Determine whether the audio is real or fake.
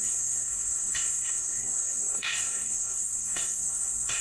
fake